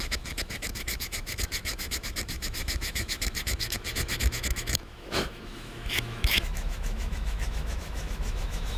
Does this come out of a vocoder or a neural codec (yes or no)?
yes